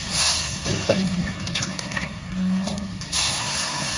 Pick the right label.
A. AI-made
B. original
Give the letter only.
A